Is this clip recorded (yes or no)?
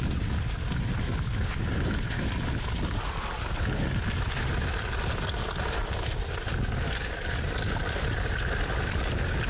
yes